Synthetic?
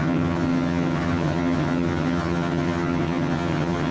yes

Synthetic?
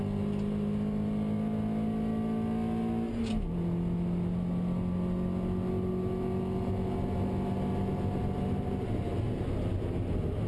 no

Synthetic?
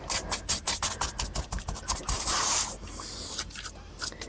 no